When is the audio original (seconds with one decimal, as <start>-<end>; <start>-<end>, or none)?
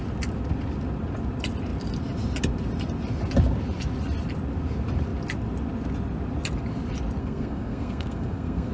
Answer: 0.0-7.2